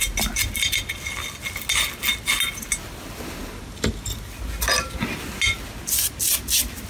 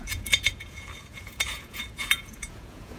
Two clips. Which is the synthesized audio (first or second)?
second